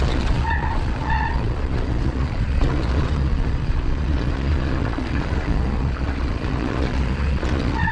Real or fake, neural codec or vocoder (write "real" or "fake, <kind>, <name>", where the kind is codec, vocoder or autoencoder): fake, vocoder, Vocos